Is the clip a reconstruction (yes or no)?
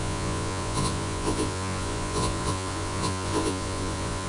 yes